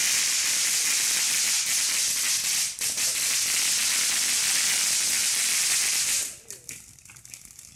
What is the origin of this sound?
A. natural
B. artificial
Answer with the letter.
A